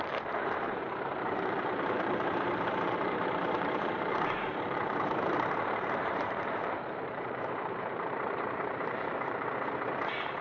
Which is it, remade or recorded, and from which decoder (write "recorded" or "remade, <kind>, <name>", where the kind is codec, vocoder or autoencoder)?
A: remade, vocoder, BigVGAN v2